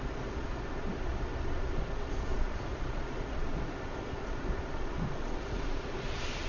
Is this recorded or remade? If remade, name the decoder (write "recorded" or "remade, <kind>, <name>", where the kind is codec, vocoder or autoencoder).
remade, vocoder, Vocos